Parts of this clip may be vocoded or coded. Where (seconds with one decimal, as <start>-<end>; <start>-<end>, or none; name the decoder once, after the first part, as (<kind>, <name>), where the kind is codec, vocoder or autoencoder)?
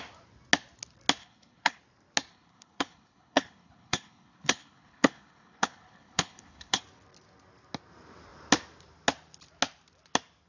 1.2-1.8 (codec, HILCodec); 2.3-6.8